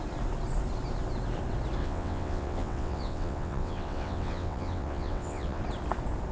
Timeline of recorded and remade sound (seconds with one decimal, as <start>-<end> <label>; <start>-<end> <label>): 0.0-1.8 recorded; 1.8-5.6 remade; 5.6-6.3 recorded